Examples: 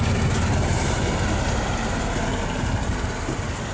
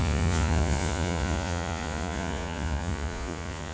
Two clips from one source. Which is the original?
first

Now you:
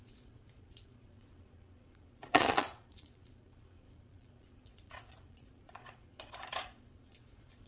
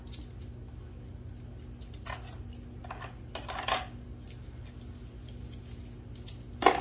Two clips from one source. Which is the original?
second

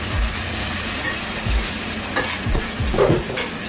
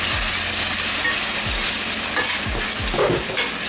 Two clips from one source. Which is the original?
second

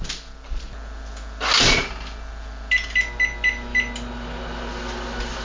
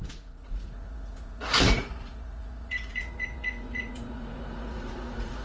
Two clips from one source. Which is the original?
first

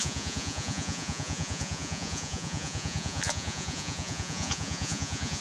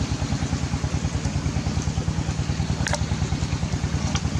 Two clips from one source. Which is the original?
second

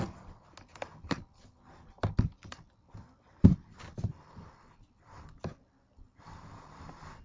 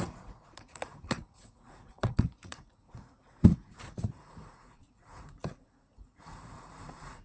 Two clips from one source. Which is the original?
first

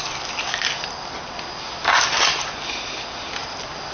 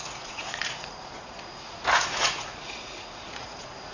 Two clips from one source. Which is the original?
first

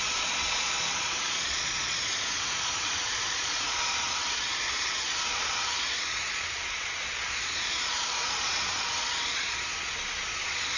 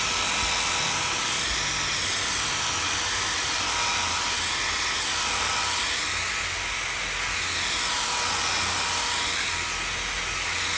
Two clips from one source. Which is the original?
second